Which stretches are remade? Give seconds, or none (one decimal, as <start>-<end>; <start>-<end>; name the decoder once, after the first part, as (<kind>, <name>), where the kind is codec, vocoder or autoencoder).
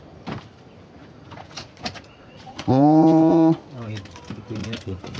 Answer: 1.0-3.6 (vocoder, Vocos); 4.6-5.2